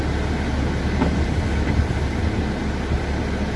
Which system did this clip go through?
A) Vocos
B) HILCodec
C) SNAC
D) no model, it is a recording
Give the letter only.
D